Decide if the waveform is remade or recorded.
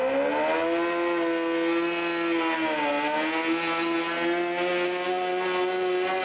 recorded